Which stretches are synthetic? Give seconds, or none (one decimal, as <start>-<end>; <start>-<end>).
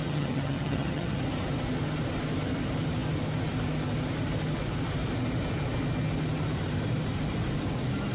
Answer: 0.0-1.2